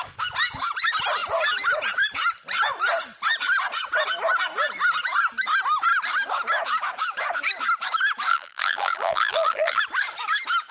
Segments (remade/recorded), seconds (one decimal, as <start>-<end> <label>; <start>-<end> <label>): 0.0-8.3 recorded; 8.3-9.8 remade; 9.8-10.7 recorded